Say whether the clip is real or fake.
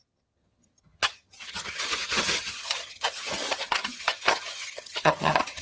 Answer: fake